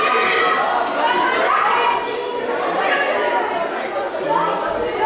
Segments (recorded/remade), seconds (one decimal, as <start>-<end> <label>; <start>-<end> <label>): 0.0-5.1 recorded